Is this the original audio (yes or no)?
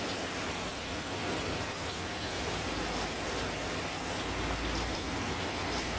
yes